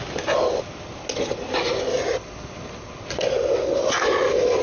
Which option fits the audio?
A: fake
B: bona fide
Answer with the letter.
B